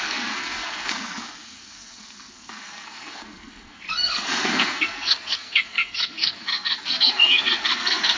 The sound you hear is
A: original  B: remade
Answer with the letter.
B